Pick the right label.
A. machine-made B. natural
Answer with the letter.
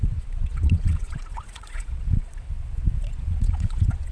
A